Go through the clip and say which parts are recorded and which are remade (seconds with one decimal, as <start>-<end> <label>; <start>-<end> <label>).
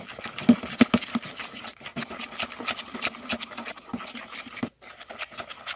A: 0.0-5.8 recorded